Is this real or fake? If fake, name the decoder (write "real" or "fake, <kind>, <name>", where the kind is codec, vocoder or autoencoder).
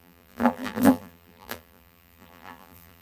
fake, vocoder, BigVGAN v2